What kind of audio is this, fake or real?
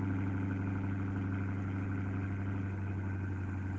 real